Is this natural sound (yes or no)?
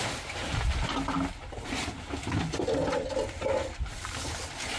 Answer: yes